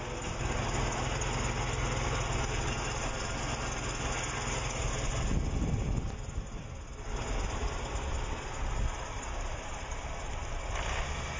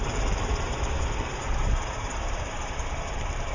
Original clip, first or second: first